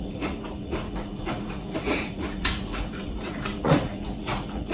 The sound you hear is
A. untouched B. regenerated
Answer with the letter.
B